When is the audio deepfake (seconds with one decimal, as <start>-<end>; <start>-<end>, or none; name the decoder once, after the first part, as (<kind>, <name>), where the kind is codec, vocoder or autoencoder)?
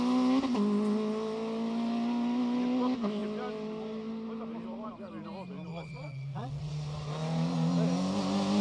5.7-6.7 (vocoder, WaveNeXt)